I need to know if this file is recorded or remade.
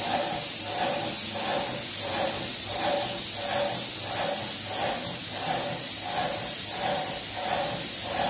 recorded